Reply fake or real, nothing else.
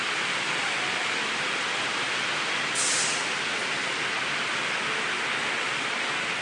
real